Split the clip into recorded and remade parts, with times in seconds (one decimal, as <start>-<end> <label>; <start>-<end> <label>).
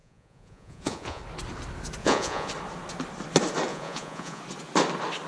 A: 0.0-1.2 remade; 1.2-2.0 recorded; 2.0-2.5 remade; 2.5-3.7 recorded; 3.7-4.4 remade; 4.4-5.3 recorded